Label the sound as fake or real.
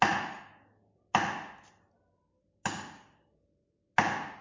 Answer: real